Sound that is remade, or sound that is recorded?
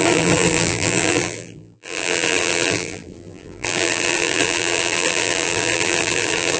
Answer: remade